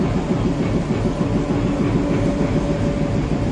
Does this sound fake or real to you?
real